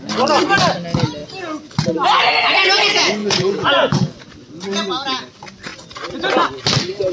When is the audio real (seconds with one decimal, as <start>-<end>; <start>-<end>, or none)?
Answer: 0.0-3.2; 4.1-7.1